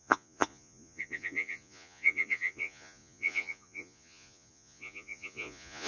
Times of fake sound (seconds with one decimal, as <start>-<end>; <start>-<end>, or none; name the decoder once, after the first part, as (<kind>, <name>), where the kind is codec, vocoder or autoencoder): 0.0-5.9 (vocoder, Vocos)